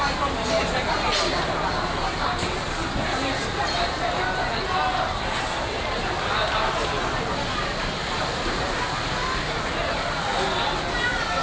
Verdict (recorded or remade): recorded